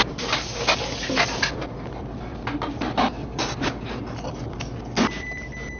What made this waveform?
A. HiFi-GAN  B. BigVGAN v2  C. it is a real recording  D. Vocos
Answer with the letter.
C